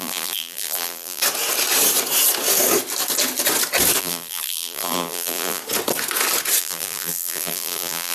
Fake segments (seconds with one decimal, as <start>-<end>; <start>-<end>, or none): 0.0-1.2; 4.0-5.6; 6.6-8.1